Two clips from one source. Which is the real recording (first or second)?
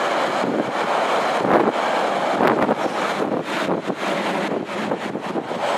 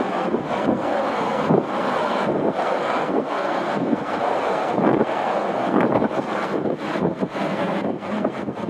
first